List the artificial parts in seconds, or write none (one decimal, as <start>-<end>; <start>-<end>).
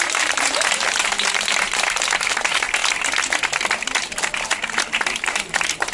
0.0-2.8; 5.0-5.9